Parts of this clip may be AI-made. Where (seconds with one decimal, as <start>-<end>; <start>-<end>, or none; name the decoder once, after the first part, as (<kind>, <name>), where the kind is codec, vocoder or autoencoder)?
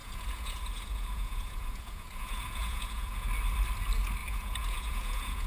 0.0-3.3 (vocoder, Vocos); 4.2-5.5